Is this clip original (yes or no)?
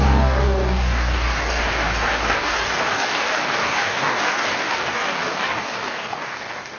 no